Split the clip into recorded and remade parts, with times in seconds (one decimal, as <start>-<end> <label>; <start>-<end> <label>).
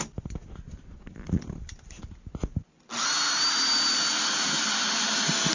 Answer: 0.0-5.5 recorded